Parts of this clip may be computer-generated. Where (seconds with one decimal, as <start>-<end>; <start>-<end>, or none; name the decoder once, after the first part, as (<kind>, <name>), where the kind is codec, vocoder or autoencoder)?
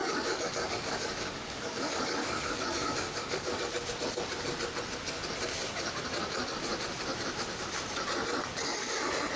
0.0-3.6 (codec, DAC)